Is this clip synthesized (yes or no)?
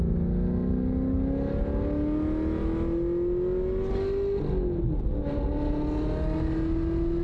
no